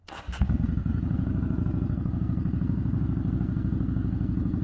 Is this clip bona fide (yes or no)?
no